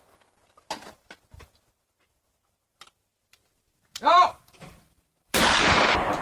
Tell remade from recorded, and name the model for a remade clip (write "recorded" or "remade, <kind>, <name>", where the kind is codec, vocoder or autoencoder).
remade, vocoder, BigVGAN v2